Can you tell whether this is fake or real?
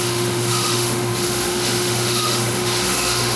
fake